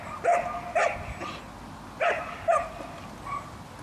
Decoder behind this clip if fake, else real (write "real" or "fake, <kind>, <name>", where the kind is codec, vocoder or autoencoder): real